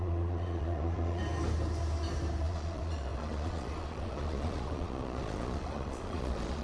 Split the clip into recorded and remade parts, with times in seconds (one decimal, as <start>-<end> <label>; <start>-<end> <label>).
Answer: 0.0-1.2 remade; 1.2-2.4 recorded; 2.4-6.6 remade